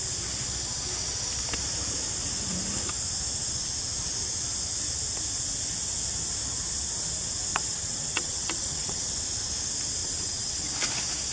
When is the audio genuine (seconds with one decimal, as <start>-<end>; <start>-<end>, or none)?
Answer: 0.0-7.5; 9.1-10.0; 10.7-11.3